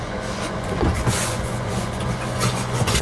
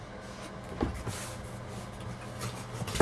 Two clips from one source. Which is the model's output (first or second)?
first